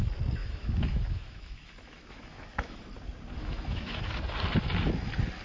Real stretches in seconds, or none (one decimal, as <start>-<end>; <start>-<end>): 0.0-0.4; 2.8-3.4; 4.0-5.4